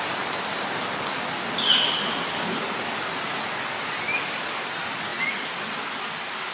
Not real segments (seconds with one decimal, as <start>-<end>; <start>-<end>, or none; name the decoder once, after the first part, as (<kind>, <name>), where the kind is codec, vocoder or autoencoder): none